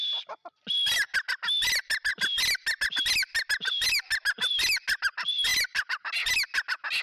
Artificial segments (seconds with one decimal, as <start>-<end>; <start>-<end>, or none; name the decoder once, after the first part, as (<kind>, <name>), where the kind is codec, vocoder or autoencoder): none